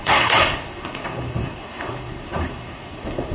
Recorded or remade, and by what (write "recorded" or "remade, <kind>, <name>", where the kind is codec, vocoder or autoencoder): remade, codec, SNAC